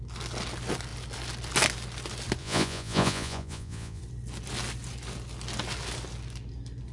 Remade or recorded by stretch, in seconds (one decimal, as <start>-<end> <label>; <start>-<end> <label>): 0.0-2.4 recorded; 2.4-4.0 remade; 4.0-6.9 recorded